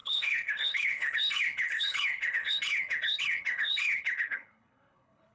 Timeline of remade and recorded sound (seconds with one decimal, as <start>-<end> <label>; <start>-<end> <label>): 0.0-5.3 remade